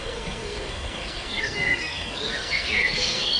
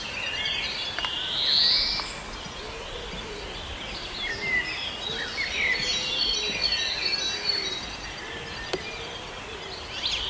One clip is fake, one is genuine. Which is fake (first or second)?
first